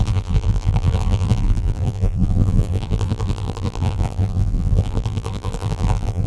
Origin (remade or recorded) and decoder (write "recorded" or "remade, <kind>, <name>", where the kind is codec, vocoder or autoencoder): remade, vocoder, BigVGAN v2